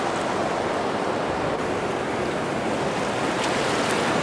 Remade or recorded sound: recorded